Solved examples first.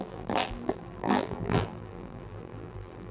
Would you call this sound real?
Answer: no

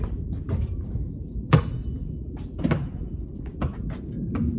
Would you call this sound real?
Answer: yes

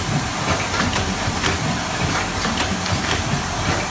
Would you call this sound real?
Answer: no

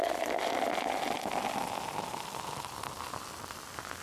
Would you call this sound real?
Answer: yes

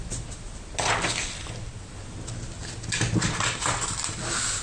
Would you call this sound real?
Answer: yes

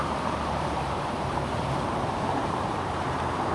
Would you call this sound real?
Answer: no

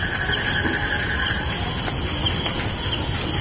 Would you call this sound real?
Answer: yes